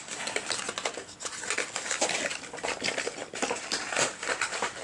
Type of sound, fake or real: real